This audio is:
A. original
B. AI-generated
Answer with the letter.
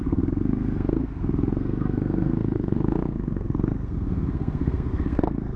B